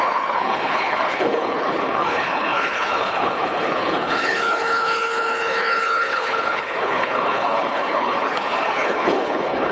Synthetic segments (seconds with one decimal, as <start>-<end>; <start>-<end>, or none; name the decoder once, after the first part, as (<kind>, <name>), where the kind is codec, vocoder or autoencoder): 0.0-9.7 (codec, HILCodec)

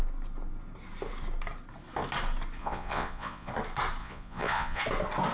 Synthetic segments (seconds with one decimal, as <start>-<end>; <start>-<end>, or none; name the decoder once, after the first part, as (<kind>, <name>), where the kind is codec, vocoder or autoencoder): 2.6-3.5 (vocoder, Vocos); 4.0-4.8